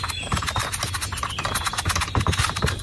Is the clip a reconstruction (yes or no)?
no